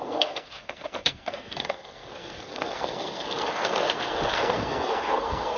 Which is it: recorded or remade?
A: remade